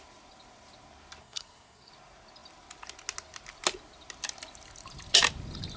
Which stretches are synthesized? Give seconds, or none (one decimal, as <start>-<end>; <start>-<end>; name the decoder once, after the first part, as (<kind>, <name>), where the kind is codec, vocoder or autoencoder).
1.2-1.9 (codec, SNAC)